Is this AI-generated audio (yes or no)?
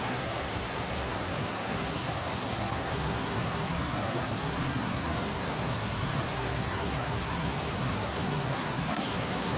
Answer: yes